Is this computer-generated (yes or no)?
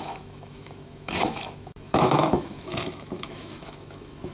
yes